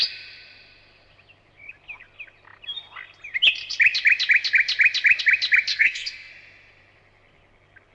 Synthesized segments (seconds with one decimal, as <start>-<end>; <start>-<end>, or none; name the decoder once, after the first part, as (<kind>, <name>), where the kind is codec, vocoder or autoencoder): 5.7-6.3 (codec, SNAC)